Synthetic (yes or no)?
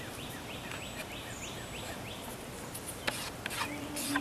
no